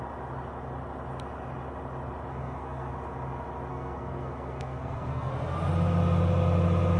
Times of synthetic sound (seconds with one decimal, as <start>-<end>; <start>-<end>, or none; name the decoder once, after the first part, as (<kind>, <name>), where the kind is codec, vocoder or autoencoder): 2.3-2.9 (codec, SNAC); 3.7-5.3